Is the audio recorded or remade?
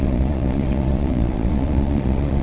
remade